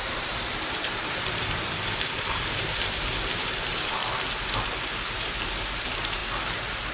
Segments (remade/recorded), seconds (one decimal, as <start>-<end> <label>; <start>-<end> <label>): 0.0-4.0 remade; 4.0-5.0 recorded; 5.0-6.9 remade